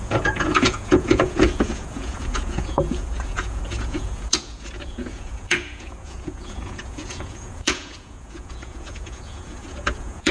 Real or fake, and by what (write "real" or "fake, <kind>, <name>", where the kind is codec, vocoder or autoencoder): fake, vocoder, Vocos